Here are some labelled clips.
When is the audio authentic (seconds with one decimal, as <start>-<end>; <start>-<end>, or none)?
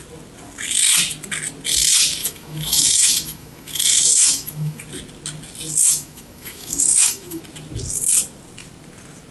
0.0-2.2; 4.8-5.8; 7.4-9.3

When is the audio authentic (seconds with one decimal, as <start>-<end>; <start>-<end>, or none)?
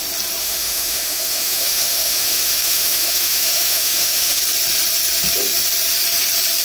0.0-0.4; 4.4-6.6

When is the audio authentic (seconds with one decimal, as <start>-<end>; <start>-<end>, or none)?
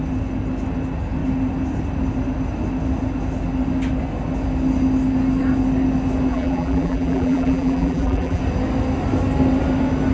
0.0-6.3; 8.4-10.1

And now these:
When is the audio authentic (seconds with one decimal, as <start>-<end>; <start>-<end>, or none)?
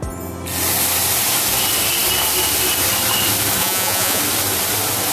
0.0-3.6; 4.2-5.1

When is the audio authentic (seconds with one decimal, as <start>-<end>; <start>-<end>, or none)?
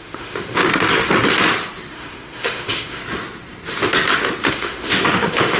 0.6-1.9; 3.0-4.5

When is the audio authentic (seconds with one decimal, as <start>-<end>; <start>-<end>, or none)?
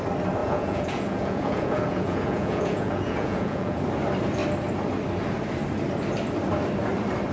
0.0-0.4; 3.8-7.3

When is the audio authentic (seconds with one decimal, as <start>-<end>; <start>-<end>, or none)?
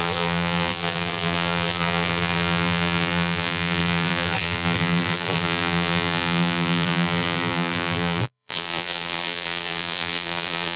none